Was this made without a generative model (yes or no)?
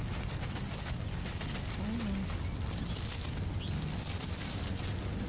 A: yes